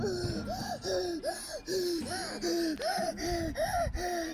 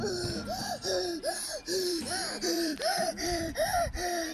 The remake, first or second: second